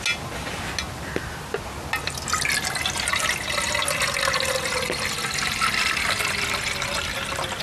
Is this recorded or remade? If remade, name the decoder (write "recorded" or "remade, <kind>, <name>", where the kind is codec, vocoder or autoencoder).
recorded